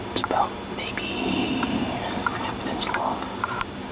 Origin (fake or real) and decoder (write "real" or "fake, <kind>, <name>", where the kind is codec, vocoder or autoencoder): real